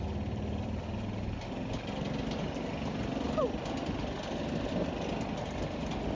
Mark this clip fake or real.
real